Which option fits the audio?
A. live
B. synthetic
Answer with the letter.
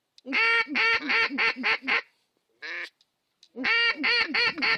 A